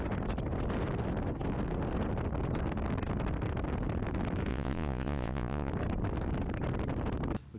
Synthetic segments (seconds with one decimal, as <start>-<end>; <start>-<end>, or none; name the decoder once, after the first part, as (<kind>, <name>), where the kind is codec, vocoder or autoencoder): 4.5-5.7 (vocoder, Vocos)